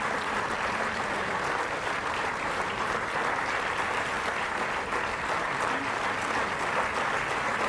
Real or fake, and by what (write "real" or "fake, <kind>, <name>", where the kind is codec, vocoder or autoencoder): real